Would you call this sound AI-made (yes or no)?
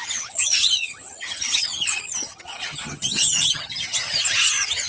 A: yes